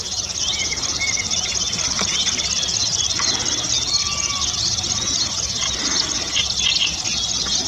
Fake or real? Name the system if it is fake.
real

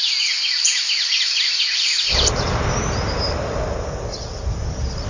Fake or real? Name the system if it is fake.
real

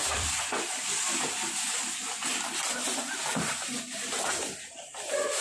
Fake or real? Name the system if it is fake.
fake, vocoder, BigVGAN v2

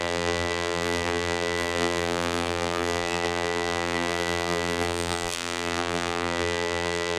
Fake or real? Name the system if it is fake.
fake, vocoder, BigVGAN v2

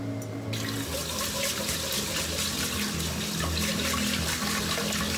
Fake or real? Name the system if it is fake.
real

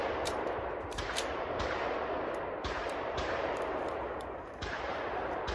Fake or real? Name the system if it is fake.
fake, vocoder, BigVGAN v2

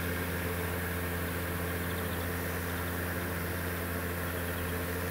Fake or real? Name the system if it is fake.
real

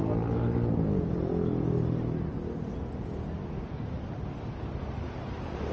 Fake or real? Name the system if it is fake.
real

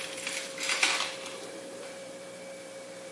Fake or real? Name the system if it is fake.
fake, vocoder, BigVGAN v2